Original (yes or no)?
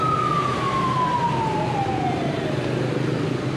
yes